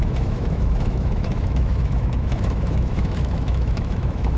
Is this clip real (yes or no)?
no